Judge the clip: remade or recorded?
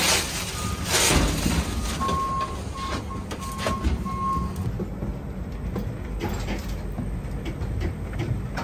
recorded